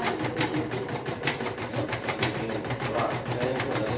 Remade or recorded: recorded